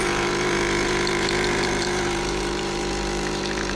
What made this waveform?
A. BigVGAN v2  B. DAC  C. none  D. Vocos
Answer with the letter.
A